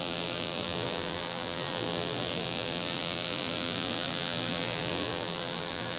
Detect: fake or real fake